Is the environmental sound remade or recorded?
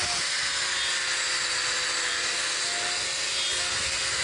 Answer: recorded